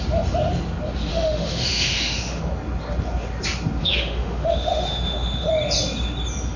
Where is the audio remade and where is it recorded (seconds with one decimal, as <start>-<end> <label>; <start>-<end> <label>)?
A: 0.0-1.1 recorded; 1.1-2.4 remade; 2.4-3.8 recorded; 3.8-5.5 remade; 5.5-6.6 recorded

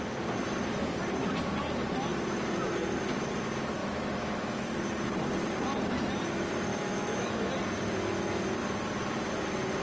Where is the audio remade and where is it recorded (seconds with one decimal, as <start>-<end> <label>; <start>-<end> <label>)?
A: 0.0-3.8 recorded; 3.8-4.7 remade; 4.7-6.7 recorded; 6.7-7.5 remade; 7.5-9.8 recorded

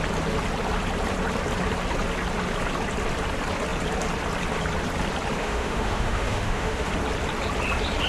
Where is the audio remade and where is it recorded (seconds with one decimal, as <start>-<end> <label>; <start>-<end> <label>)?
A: 0.0-5.4 recorded; 5.4-6.9 remade; 6.9-8.1 recorded

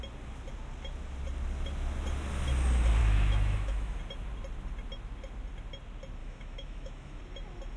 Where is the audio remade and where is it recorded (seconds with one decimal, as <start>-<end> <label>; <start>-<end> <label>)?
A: 0.0-3.0 recorded; 3.0-4.0 remade; 4.0-6.2 recorded; 6.2-7.2 remade; 7.2-7.8 recorded

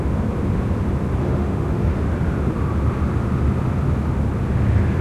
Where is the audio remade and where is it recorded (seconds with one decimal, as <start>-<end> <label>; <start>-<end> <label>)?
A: 0.0-1.2 recorded; 1.2-2.1 remade; 2.1-5.0 recorded